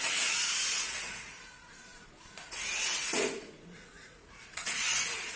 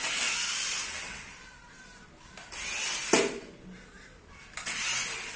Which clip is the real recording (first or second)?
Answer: second